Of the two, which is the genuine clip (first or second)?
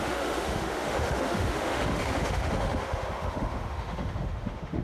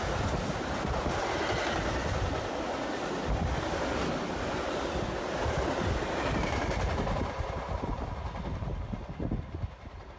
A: second